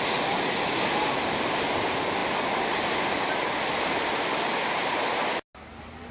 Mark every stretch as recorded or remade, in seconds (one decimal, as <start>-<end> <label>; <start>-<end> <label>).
0.0-6.1 recorded